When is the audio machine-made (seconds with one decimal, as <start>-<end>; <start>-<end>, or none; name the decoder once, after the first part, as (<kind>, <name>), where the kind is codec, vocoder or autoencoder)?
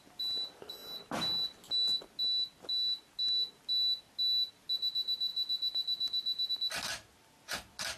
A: none